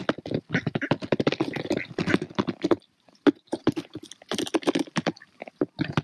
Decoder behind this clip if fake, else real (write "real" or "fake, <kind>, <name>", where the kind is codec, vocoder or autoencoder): real